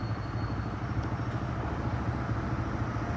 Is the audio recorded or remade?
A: recorded